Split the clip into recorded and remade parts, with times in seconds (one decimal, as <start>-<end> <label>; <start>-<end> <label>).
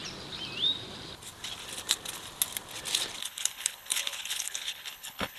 0.0-3.2 recorded; 3.2-5.4 remade